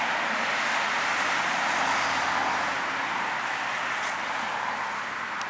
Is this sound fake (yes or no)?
no